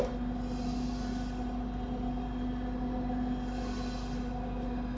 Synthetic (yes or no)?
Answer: no